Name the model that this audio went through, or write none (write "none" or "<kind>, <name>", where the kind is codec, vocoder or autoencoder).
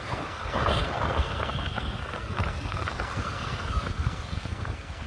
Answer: codec, SNAC